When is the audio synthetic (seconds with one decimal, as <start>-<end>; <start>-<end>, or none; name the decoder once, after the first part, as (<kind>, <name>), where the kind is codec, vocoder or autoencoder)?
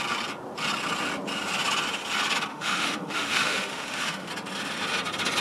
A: 2.5-4.3 (autoencoder, DAC-VAE)